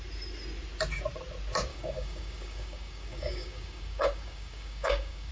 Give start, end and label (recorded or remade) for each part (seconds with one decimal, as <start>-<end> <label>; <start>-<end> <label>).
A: 0.0-1.7 recorded; 1.7-5.3 remade